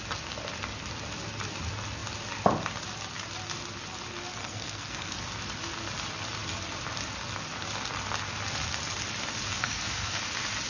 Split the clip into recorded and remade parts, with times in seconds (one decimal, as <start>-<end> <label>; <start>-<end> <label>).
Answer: 0.0-4.4 recorded; 4.4-5.2 remade; 5.2-9.5 recorded; 9.5-10.2 remade; 10.2-10.7 recorded